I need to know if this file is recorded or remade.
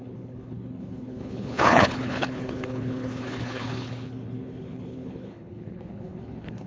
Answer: remade